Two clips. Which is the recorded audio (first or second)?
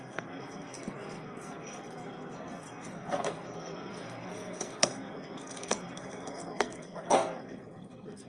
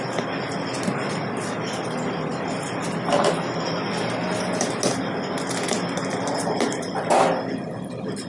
second